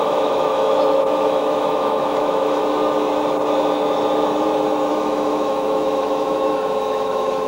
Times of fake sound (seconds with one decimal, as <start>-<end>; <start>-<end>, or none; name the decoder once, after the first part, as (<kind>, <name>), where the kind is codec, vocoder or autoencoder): 0.0-2.6 (autoencoder, DAC-VAE); 4.9-7.5